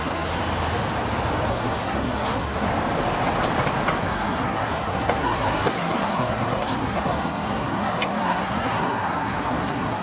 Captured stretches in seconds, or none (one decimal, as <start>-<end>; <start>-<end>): 0.4-1.5; 2.7-4.0

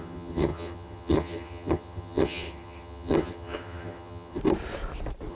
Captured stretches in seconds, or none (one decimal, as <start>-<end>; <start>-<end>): 4.4-5.3

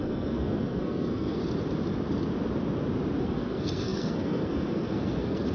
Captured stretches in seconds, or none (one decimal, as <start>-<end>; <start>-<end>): 1.4-3.2

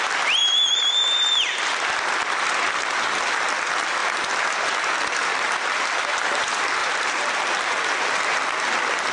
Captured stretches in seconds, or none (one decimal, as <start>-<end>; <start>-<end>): 0.0-6.8; 7.3-9.1

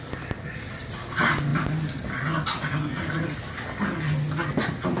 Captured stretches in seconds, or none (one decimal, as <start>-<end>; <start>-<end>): 0.0-5.0

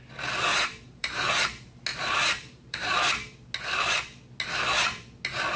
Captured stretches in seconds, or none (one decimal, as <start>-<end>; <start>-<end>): 0.0-0.5; 1.3-1.9; 3.1-5.6

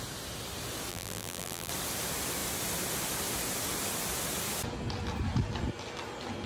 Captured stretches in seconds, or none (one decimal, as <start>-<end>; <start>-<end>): 0.0-0.9; 1.7-6.5